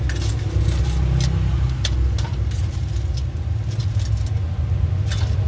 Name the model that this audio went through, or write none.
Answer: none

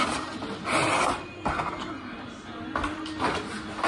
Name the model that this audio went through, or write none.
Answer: none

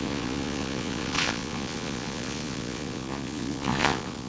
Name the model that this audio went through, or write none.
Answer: vocoder, Vocos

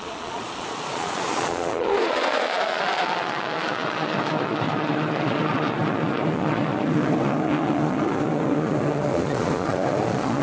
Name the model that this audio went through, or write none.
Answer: vocoder, Vocos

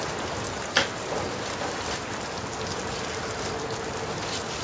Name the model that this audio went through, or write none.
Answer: none